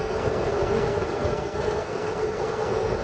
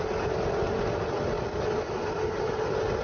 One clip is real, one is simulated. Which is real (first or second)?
second